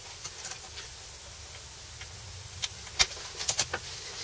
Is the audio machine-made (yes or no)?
no